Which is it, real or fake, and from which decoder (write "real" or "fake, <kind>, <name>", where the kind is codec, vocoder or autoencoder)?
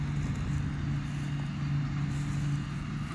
real